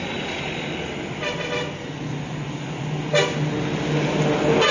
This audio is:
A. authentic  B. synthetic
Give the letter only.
A